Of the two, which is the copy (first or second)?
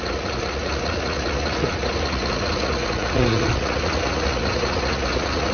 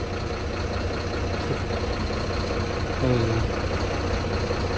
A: first